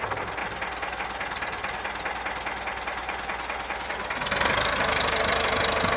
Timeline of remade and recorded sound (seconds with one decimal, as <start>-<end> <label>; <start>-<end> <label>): 0.0-3.0 recorded; 3.0-3.9 remade; 3.9-6.0 recorded